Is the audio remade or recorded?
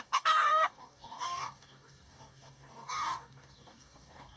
remade